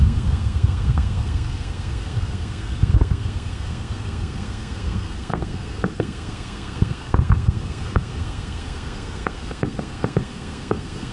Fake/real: fake